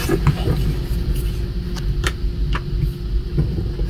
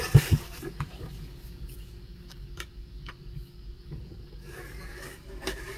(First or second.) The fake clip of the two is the second